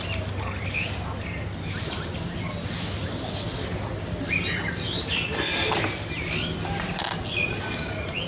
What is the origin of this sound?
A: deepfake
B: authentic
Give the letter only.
B